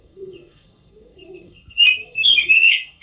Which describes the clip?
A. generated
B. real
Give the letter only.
A